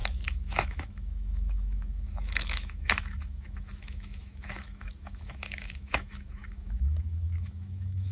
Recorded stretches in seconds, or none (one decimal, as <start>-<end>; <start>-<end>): none